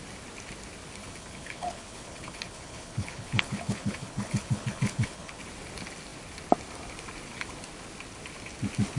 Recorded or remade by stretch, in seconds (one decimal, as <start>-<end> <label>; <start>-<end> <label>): 0.0-1.0 recorded; 1.0-5.4 remade; 5.4-9.0 recorded

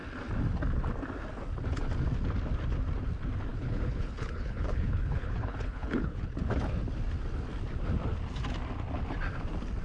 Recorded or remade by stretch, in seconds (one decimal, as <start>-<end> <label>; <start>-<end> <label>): 0.0-3.5 recorded; 3.5-6.3 remade; 6.3-9.8 recorded

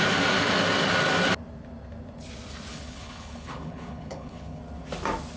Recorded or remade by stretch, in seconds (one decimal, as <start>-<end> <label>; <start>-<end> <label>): 0.0-2.7 recorded; 2.7-4.6 remade; 4.6-5.4 recorded

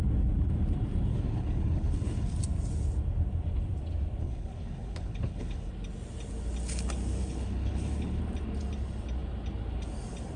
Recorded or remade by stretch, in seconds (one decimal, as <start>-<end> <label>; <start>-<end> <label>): 0.0-1.1 recorded; 1.1-2.4 remade; 2.4-4.2 recorded; 4.2-5.7 remade; 5.7-7.2 recorded; 7.2-8.2 remade; 8.2-10.4 recorded

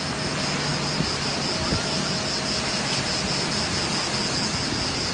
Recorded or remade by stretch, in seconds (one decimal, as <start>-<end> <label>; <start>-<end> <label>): 0.0-5.1 recorded

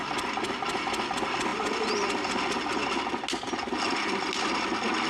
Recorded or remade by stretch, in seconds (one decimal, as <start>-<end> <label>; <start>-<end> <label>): 0.0-5.1 recorded